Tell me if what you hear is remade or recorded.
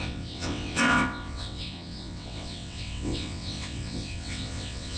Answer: remade